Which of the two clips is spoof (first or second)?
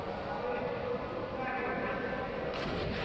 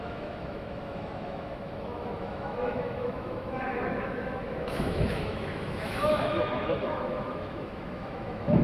second